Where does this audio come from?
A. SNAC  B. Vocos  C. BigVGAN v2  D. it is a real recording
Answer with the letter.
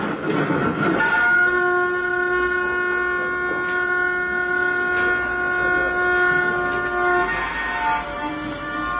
D